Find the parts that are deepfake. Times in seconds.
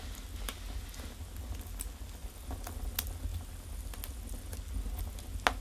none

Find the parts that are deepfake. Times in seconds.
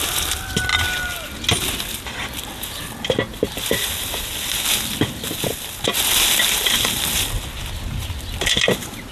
none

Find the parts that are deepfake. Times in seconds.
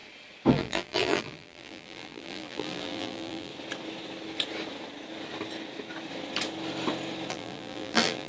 0.5-3.5 (vocoder, BigVGAN v2); 7.3-8.3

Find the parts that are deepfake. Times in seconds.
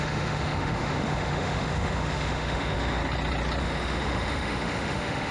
0.0-3.0 (autoencoder, DAC-VAE); 3.6-5.3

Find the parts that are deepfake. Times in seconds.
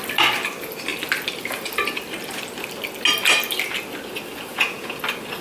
4.5-5.0 (vocoder, Vocos)